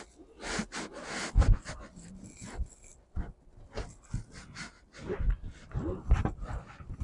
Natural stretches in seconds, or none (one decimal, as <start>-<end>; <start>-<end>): 0.0-7.0